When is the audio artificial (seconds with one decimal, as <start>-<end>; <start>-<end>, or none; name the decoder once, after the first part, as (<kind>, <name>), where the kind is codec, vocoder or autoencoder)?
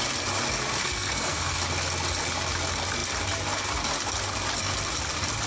0.8-1.6 (codec, SNAC)